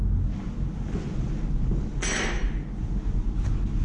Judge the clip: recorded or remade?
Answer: recorded